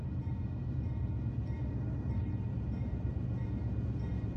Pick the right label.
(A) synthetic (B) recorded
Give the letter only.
B